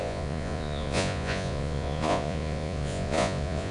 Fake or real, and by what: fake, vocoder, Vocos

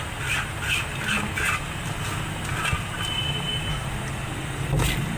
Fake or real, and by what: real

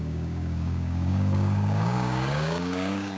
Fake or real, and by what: fake, codec, DAC